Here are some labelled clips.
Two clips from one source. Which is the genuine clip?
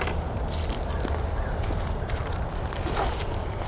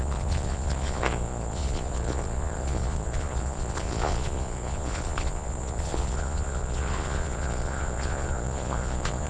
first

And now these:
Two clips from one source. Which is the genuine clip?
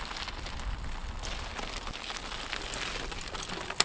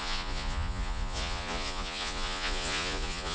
first